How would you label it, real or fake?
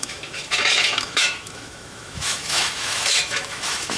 fake